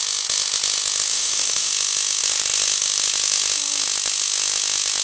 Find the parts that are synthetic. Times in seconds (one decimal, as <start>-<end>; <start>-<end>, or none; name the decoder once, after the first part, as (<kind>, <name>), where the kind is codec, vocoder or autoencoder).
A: 1.1-1.7 (autoencoder, DAC-VAE)